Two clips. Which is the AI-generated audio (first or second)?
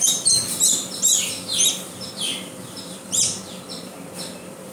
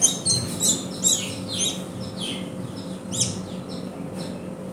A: first